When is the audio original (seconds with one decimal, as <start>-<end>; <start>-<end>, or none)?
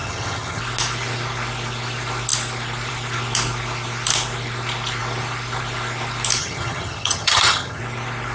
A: 0.6-6.4; 7.8-8.3